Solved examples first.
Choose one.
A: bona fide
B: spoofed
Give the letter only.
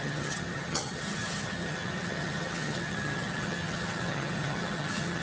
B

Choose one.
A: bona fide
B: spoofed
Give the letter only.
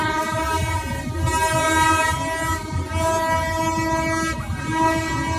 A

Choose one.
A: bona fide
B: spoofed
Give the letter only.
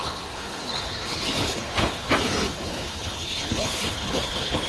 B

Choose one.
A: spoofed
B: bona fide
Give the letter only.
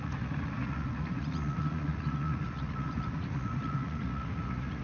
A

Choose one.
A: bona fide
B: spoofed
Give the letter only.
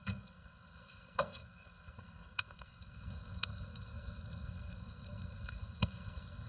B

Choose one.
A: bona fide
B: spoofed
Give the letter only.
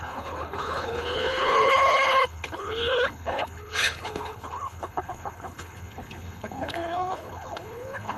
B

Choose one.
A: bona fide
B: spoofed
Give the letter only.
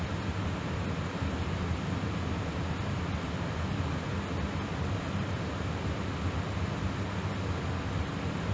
A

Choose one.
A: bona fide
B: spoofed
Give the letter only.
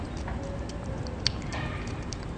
A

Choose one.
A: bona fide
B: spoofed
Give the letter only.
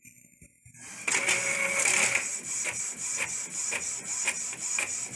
A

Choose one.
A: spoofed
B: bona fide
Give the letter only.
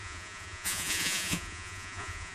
A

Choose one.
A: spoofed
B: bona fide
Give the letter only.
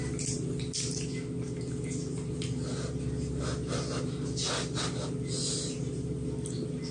B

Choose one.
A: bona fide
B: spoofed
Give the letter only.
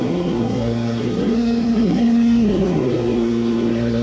B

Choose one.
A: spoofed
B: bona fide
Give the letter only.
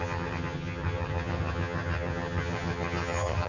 A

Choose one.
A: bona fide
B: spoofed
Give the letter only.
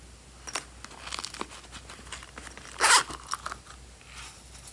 A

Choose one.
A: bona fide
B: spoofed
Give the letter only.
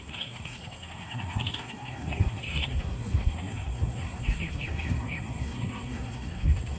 B